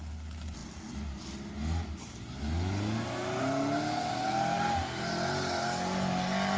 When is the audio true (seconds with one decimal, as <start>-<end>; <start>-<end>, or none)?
0.0-6.6